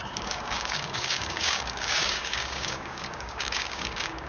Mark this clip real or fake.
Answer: fake